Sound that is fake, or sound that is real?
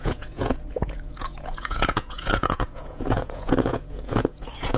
fake